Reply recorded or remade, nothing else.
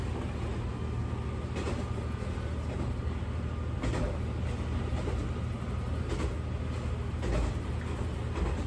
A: recorded